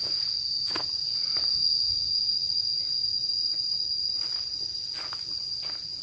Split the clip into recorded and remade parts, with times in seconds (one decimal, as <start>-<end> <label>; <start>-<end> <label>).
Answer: 0.0-6.0 recorded